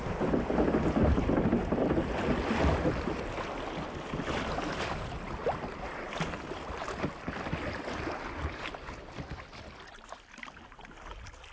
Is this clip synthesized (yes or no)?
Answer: no